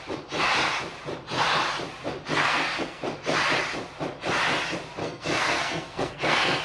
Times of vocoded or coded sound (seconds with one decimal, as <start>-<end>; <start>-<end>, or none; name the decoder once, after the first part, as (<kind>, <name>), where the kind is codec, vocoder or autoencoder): 2.4-3.0 (codec, SNAC); 5.0-6.6